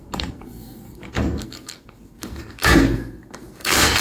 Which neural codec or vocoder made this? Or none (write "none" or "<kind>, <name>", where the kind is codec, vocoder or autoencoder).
codec, SNAC